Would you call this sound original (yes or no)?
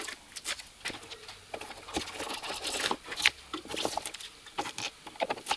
yes